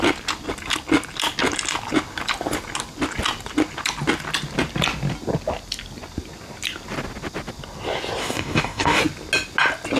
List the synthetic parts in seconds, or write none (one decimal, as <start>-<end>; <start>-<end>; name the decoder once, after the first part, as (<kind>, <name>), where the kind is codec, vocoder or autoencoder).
8.2-9.0 (codec, DAC)